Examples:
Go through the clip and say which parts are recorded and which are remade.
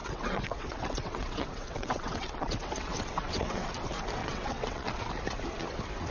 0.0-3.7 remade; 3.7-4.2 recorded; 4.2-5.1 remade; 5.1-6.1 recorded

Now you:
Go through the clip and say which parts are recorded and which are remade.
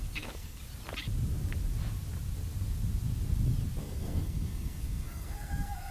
0.0-0.6 remade; 0.6-3.8 recorded; 3.8-5.9 remade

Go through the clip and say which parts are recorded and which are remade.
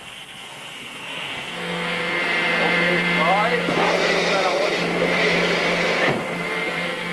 0.0-2.2 remade; 2.2-6.5 recorded; 6.5-7.1 remade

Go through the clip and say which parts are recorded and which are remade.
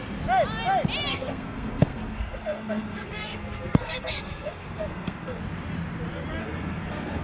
0.0-1.1 recorded; 1.1-5.4 remade; 5.4-6.4 recorded; 6.4-7.2 remade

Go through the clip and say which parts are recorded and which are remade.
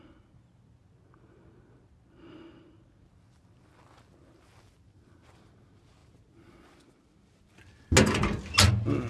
0.0-9.1 recorded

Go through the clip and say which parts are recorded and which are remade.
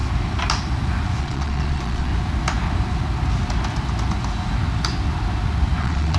0.0-1.2 recorded; 1.2-2.1 remade; 2.1-5.8 recorded; 5.8-6.2 remade